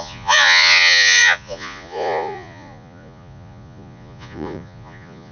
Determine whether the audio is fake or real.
fake